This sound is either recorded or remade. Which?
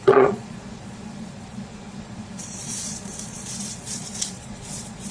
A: remade